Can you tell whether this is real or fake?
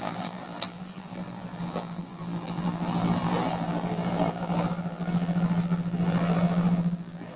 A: fake